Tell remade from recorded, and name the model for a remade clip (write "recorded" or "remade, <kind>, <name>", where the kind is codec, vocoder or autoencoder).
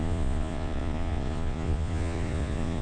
remade, vocoder, Vocos